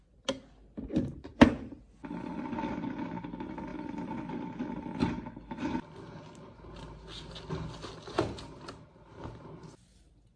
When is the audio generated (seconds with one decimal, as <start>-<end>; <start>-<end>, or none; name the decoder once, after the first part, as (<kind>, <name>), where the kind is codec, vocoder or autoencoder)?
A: none